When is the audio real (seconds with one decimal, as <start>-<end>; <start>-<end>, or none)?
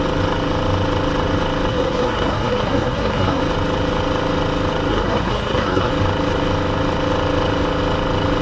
0.0-1.7; 3.4-4.9; 5.9-8.4